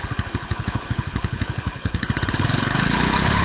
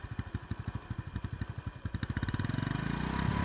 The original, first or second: second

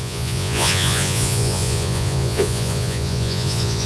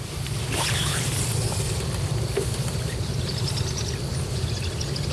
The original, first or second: second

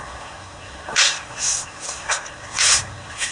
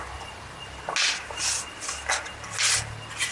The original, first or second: second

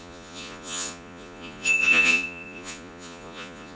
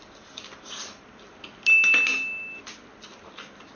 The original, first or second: second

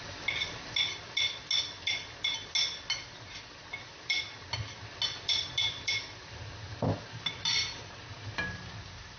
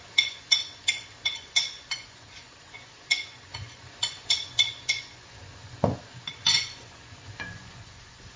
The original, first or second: first